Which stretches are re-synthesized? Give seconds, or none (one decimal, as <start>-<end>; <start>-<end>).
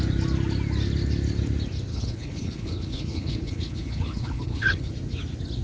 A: 1.9-4.9